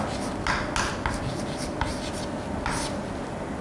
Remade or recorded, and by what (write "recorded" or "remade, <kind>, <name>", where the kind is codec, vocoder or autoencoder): recorded